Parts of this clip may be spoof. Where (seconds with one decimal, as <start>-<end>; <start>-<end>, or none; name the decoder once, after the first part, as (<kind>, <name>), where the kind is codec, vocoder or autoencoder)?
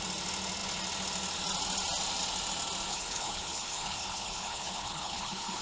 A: 2.9-5.6 (codec, HILCodec)